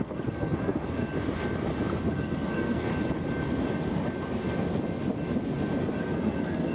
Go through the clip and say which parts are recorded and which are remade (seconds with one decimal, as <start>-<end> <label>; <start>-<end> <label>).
0.0-1.0 remade; 1.0-2.1 recorded; 2.1-2.9 remade; 2.9-6.0 recorded; 6.0-6.7 remade